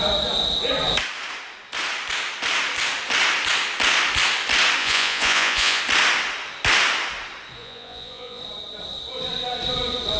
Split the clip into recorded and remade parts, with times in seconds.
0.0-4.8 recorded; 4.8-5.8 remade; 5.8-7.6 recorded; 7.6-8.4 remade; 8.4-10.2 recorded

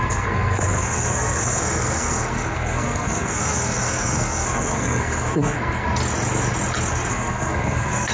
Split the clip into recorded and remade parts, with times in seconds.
0.0-6.0 remade; 6.0-7.1 recorded; 7.1-8.1 remade

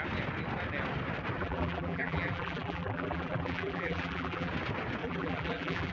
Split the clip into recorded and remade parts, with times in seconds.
0.0-1.4 recorded; 1.4-4.5 remade; 4.5-5.0 recorded; 5.0-5.9 remade

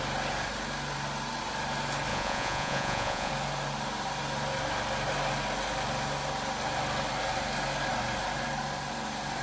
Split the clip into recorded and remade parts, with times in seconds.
0.0-2.1 recorded; 2.1-3.3 remade; 3.3-9.4 recorded

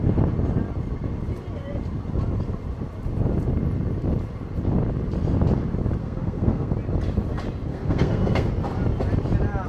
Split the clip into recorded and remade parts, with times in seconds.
0.0-6.0 recorded; 6.0-6.7 remade; 6.7-7.7 recorded; 7.7-8.5 remade; 8.5-9.7 recorded

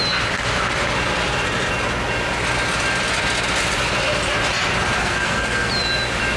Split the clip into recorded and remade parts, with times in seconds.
0.0-5.0 recorded; 5.0-5.7 remade; 5.7-6.4 recorded

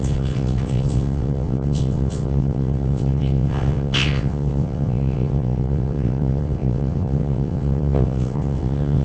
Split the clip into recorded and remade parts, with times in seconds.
0.0-9.0 remade